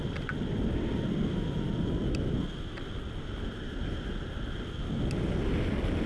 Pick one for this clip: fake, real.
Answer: real